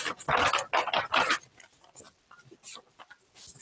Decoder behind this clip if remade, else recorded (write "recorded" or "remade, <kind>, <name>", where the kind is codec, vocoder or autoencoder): recorded